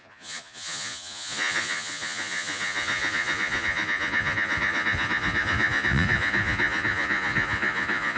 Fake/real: fake